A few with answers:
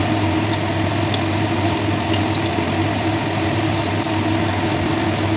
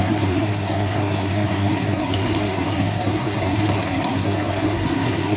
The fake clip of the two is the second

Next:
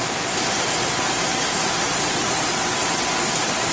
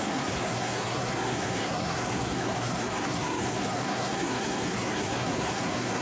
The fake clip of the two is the second